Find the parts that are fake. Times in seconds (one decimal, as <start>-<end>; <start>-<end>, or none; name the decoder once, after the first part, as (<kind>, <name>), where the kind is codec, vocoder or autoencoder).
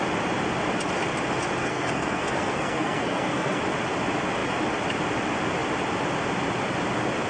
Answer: 1.6-3.6 (codec, SNAC)